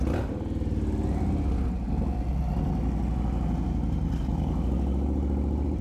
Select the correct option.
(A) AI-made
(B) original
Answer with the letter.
B